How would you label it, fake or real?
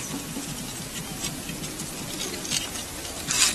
real